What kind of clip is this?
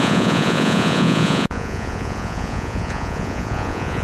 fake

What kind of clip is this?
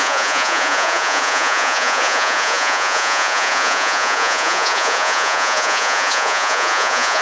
fake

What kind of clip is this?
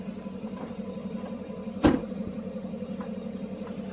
real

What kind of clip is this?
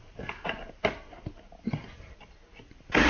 real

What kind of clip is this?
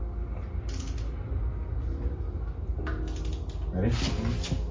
real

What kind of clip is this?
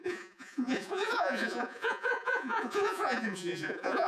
fake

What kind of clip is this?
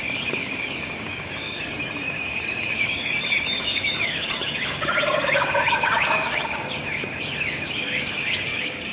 fake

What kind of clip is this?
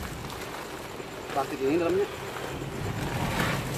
real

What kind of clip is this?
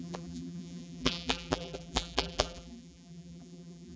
fake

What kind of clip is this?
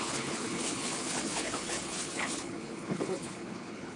fake